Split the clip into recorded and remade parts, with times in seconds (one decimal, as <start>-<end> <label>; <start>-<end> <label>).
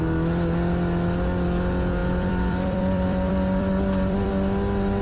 0.0-2.0 recorded; 2.0-4.3 remade; 4.3-5.0 recorded